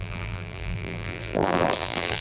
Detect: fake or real fake